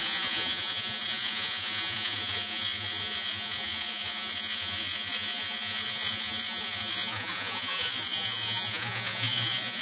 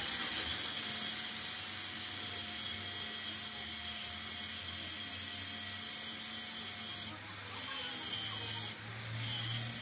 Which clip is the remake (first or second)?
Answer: first